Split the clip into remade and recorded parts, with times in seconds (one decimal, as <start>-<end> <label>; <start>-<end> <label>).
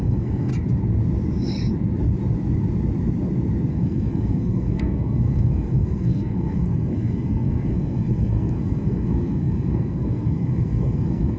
0.0-0.5 remade; 0.5-3.7 recorded; 3.7-11.4 remade